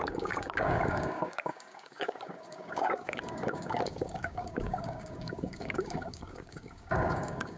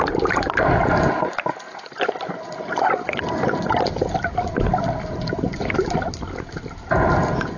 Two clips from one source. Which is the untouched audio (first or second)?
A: second